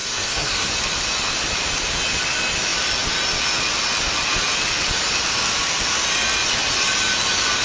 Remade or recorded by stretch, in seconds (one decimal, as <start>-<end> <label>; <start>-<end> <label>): 0.0-0.7 remade; 0.7-7.6 recorded